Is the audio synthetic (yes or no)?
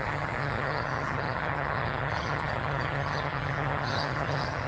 yes